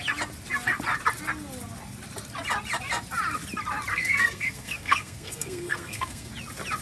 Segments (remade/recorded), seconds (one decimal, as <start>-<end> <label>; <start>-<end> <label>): 0.0-3.9 recorded; 3.9-6.3 remade; 6.3-6.8 recorded